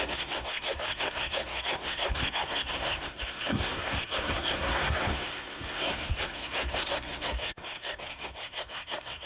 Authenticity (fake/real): fake